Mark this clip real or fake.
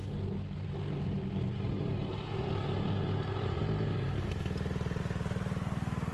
real